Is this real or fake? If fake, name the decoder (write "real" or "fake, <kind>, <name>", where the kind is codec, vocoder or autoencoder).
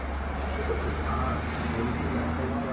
real